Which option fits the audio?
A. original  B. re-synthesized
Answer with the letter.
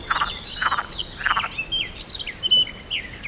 A